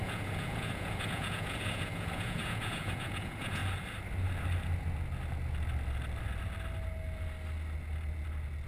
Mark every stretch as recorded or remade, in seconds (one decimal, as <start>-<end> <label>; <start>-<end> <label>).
0.0-3.6 remade; 3.6-8.7 recorded